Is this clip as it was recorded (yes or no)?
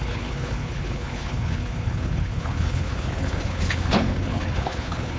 no